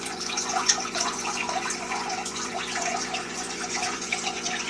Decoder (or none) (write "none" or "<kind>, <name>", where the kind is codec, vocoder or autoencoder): vocoder, Vocos